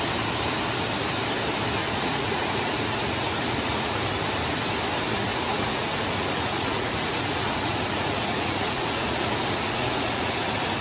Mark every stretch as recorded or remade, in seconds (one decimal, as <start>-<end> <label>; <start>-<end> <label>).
0.0-1.8 recorded; 1.8-4.0 remade; 4.0-5.3 recorded; 5.3-10.3 remade; 10.3-10.8 recorded